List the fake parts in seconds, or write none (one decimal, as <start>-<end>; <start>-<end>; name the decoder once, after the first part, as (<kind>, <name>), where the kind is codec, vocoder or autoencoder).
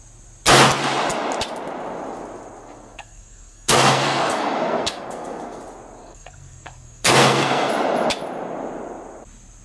2.6-5.6 (codec, SNAC); 6.0-7.7